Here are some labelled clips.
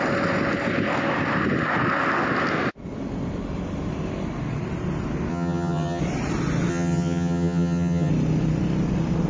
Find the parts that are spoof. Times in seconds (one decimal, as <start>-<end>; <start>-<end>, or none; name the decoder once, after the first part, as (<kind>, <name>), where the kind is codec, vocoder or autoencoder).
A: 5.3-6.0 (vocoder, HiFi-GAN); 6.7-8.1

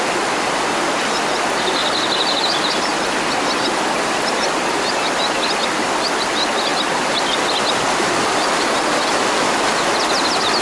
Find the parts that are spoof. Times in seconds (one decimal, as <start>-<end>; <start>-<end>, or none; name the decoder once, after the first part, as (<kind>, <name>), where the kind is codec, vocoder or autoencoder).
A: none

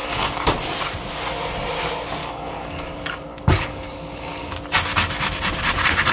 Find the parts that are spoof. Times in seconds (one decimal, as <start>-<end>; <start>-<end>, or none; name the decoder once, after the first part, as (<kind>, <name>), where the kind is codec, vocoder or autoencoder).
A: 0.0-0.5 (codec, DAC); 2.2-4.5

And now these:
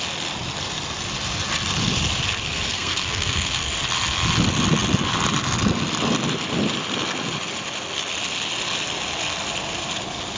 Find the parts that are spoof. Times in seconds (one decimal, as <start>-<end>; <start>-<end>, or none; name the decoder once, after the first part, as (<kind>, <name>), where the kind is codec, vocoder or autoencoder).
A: 2.7-3.7 (codec, SNAC)

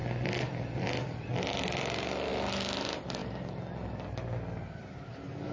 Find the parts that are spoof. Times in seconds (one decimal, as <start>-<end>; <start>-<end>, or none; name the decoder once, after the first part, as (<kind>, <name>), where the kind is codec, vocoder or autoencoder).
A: none

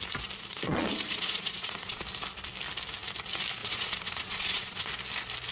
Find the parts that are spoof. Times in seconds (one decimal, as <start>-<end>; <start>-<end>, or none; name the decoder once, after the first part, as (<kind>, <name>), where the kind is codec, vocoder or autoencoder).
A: 0.5-2.0 (vocoder, Vocos); 3.6-4.9

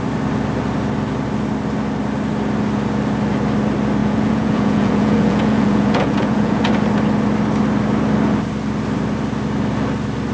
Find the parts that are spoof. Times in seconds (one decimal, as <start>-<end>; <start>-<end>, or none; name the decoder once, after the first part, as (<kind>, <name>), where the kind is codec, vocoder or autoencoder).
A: 4.0-6.7 (vocoder, Vocos)

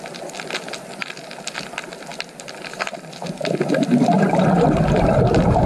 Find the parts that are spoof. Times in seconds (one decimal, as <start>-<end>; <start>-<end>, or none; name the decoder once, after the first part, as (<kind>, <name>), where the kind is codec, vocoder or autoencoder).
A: 2.1-5.7 (vocoder, BigVGAN v2)